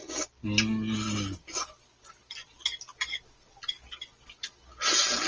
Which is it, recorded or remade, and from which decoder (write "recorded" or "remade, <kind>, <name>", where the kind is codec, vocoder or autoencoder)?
recorded